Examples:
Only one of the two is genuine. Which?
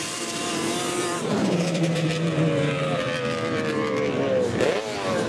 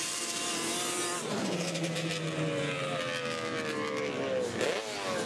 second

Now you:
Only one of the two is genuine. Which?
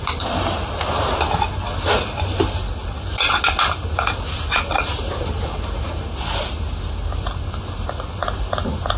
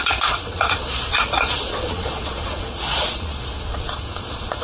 first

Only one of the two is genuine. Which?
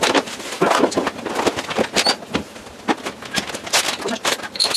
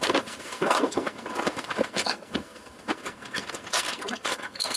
first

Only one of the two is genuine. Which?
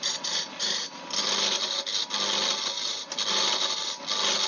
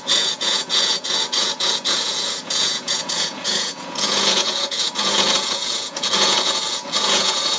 first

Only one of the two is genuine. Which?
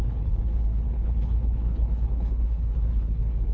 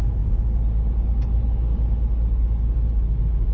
second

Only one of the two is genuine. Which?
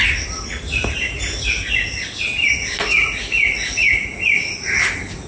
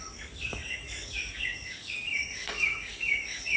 first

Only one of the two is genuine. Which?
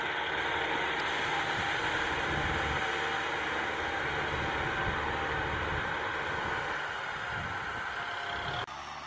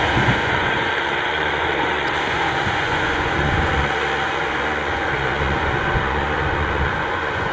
first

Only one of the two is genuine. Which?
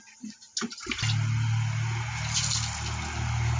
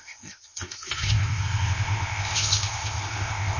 first